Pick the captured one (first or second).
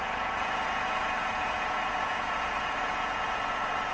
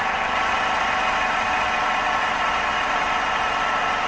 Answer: second